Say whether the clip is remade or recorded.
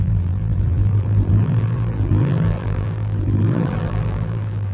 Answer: remade